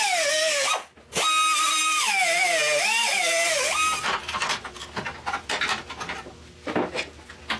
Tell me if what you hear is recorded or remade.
recorded